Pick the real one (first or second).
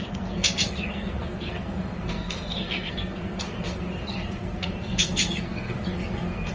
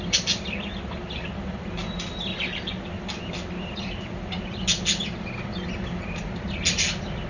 second